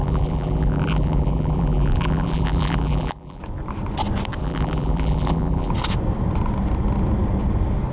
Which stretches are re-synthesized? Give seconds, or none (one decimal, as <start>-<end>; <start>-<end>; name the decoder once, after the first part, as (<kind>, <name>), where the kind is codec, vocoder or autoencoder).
0.0-3.4 (vocoder, BigVGAN v2); 4.4-5.7